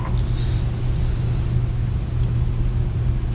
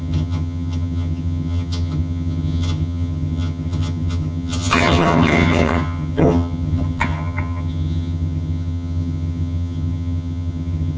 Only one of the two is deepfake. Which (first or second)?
second